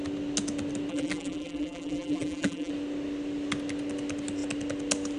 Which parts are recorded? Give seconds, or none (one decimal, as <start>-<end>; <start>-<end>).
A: 0.0-0.9; 2.7-5.2